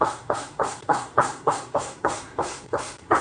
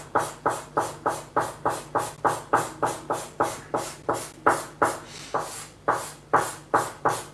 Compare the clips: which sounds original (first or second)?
second